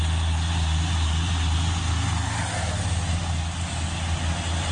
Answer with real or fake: real